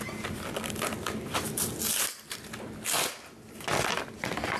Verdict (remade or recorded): recorded